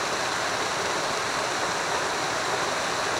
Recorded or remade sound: recorded